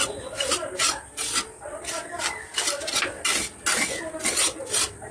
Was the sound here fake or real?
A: real